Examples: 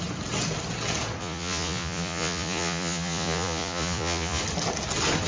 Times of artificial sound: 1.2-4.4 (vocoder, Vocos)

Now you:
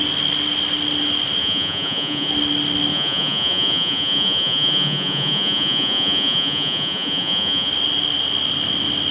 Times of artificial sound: 1.4-2.3 (vocoder, Vocos); 2.9-7.7

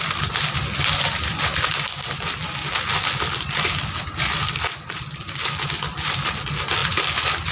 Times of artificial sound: none